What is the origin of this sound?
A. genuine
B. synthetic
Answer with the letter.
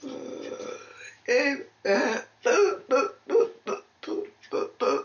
A